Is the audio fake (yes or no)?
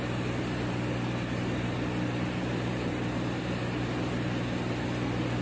no